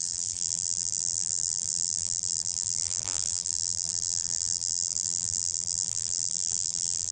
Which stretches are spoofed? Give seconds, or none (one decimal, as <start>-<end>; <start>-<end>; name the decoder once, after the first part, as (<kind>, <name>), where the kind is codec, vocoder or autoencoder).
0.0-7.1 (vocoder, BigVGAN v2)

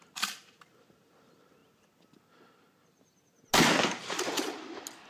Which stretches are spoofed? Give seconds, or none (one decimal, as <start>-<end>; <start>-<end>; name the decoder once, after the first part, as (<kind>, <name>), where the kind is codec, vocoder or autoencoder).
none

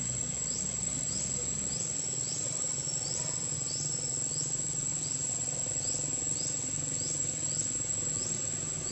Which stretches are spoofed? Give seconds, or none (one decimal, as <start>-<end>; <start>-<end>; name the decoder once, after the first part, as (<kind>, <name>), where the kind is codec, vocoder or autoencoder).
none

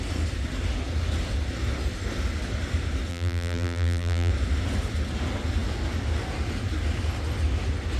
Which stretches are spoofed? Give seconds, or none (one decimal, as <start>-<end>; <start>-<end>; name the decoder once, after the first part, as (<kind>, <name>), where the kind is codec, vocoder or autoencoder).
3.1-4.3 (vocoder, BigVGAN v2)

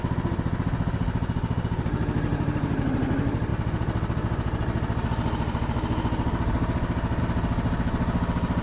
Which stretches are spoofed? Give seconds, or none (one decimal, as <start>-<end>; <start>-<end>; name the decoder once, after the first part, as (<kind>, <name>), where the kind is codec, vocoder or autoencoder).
2.3-2.9 (vocoder, BigVGAN v2)

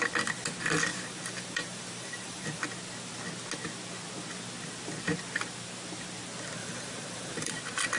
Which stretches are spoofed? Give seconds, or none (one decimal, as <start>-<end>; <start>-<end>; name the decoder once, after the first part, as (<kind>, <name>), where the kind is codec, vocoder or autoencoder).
0.9-2.6 (vocoder, BigVGAN v2); 6.6-7.5